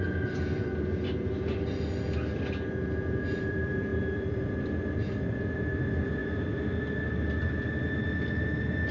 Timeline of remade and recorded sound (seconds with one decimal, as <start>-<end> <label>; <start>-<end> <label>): 0.0-8.9 recorded

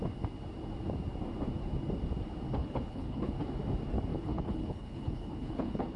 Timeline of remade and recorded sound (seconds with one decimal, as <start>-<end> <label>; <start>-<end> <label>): 0.0-2.6 recorded; 2.6-3.3 remade; 3.3-4.1 recorded; 4.1-6.0 remade

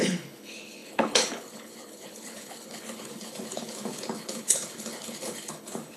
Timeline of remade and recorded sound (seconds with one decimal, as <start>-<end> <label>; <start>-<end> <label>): 0.0-6.0 remade

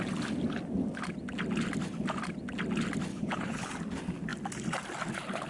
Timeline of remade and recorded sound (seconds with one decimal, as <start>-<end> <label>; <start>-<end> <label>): 0.0-3.1 recorded; 3.1-3.7 remade; 3.7-5.5 recorded

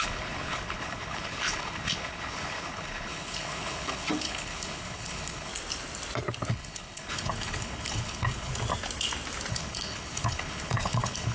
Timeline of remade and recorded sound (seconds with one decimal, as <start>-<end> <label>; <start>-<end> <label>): 0.0-5.5 remade; 5.5-6.5 recorded; 6.5-8.5 remade; 8.5-9.5 recorded; 9.5-11.3 remade

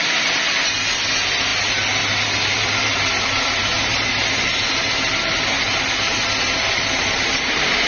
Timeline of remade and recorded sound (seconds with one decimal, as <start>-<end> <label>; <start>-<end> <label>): 0.0-7.9 recorded

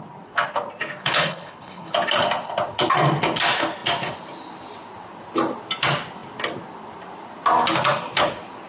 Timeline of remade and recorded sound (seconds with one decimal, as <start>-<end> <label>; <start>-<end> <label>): 0.0-1.0 recorded; 1.0-1.9 remade; 1.9-8.7 recorded

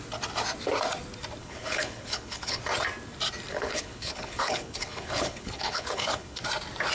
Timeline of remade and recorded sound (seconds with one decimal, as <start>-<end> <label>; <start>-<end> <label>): 0.0-1.4 recorded; 1.4-2.6 remade; 2.6-3.5 recorded; 3.5-6.4 remade; 6.4-6.9 recorded